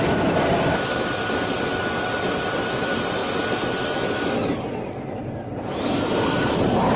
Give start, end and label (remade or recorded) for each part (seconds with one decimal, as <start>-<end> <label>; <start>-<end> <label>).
0.0-1.7 remade; 1.7-2.2 recorded; 2.2-3.2 remade; 3.2-4.9 recorded; 4.9-7.0 remade